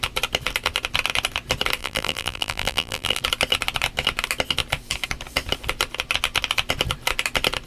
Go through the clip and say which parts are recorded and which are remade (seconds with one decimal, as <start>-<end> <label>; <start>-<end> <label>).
0.0-1.8 recorded; 1.8-3.2 remade; 3.2-7.7 recorded